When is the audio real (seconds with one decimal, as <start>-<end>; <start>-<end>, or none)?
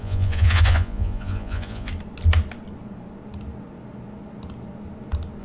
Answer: 1.9-5.4